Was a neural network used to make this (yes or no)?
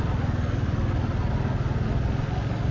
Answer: no